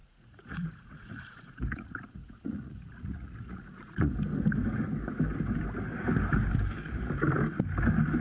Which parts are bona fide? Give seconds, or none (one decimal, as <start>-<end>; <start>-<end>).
4.1-8.2